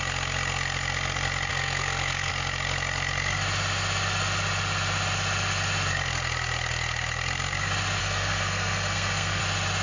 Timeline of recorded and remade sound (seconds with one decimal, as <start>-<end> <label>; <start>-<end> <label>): 0.0-1.5 recorded; 1.5-2.3 remade; 2.3-8.0 recorded; 8.0-9.4 remade; 9.4-9.8 recorded

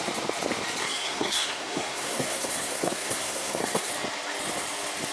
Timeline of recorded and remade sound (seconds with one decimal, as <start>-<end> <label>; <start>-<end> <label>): 0.0-0.8 recorded; 0.8-3.9 remade; 3.9-5.1 recorded

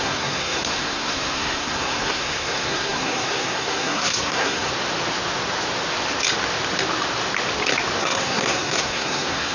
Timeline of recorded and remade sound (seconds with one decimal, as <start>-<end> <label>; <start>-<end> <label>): 0.0-4.7 remade; 4.7-8.0 recorded; 8.0-9.5 remade

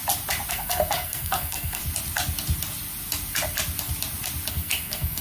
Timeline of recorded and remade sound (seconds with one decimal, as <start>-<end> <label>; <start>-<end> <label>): 0.0-0.5 recorded; 0.5-1.8 remade; 1.8-4.5 recorded; 4.5-5.2 remade

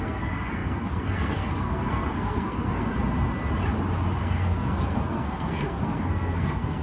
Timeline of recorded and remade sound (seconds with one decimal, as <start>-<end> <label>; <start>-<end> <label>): 0.0-2.9 remade; 2.9-4.2 recorded; 4.2-6.8 remade

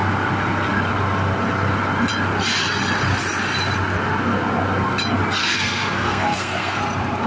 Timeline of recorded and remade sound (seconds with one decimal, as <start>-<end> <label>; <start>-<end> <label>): 0.0-5.4 recorded; 5.4-6.8 remade; 6.8-7.3 recorded

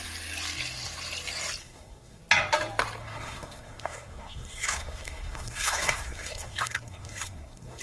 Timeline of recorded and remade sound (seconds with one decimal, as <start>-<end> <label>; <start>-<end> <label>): 0.0-1.6 recorded; 1.6-2.2 remade; 2.2-3.0 recorded; 3.0-7.8 remade